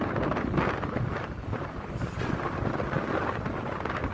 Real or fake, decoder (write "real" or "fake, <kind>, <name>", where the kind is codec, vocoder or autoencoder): real